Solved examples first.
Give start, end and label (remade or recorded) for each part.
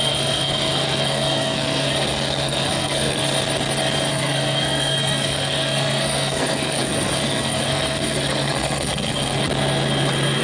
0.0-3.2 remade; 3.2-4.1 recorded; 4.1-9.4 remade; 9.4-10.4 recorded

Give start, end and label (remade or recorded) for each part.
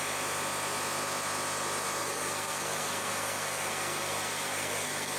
0.0-2.0 recorded; 2.0-5.2 remade